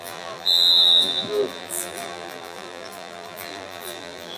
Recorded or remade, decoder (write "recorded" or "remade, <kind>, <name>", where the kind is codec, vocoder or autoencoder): remade, vocoder, BigVGAN v2